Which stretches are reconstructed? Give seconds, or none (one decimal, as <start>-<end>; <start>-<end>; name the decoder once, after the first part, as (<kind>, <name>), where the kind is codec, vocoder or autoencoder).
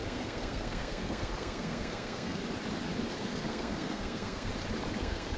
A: 0.0-2.4 (codec, SNAC); 3.1-4.5; 5.0-5.4